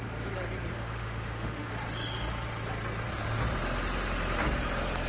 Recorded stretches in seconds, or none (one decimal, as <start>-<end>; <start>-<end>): 0.0-0.7; 1.7-5.1